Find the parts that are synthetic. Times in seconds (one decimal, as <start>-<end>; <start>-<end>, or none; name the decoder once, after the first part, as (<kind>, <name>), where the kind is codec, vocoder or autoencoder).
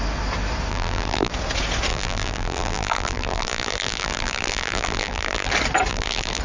0.7-1.3 (vocoder, BigVGAN v2); 1.9-5.5; 5.9-6.4